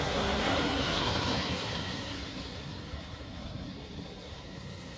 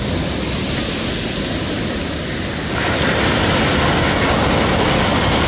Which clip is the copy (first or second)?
first